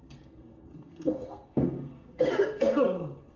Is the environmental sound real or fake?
fake